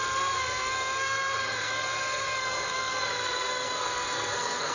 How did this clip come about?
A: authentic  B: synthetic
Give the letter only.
B